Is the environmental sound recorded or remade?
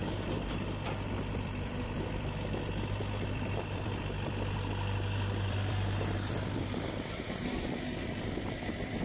remade